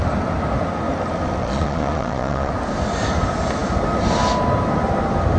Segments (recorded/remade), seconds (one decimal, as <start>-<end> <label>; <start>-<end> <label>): 0.0-1.4 recorded; 1.4-2.5 remade; 2.5-5.4 recorded